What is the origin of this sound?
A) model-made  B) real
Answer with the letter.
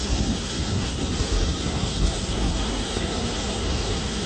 A